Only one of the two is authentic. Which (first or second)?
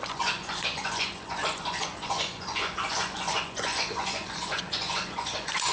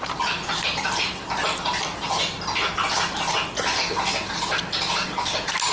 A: second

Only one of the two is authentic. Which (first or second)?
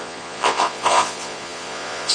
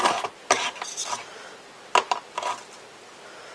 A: second